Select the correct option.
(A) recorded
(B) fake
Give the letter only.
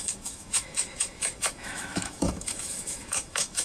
B